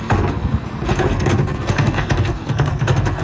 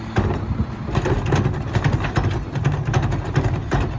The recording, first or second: second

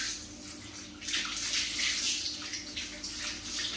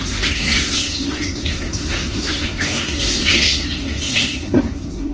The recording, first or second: first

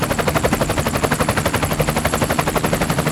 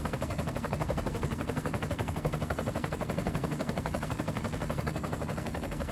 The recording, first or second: first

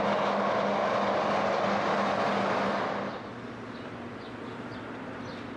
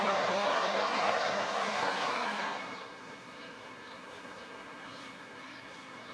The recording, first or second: first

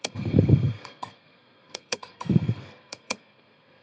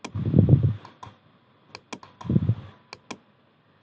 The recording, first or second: second